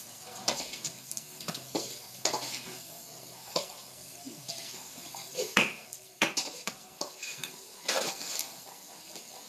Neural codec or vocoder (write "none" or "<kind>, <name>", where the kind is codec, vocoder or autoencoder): codec, SNAC